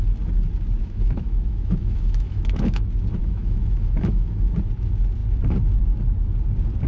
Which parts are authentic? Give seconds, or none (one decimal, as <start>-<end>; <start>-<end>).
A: 0.0-0.8; 2.8-3.2; 4.5-6.9